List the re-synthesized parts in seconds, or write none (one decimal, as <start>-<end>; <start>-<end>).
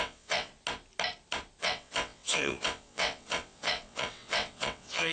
0.0-0.5; 1.6-5.1